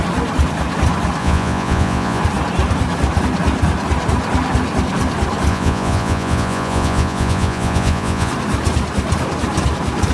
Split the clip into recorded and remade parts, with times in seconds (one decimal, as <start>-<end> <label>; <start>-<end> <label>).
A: 0.0-1.2 recorded; 1.2-2.2 remade; 2.2-5.5 recorded; 5.5-8.3 remade; 8.3-10.1 recorded